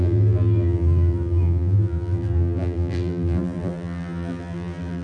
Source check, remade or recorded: remade